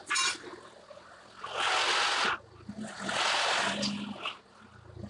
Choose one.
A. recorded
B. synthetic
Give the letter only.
A